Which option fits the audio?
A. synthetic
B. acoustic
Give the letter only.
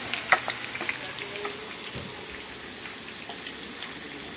B